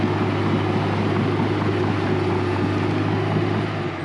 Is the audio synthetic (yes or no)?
no